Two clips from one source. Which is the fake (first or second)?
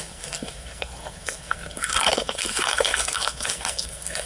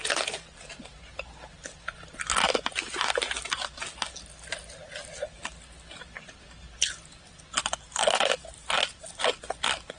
first